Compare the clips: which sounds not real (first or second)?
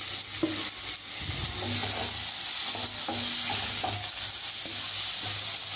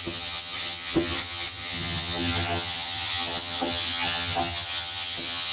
second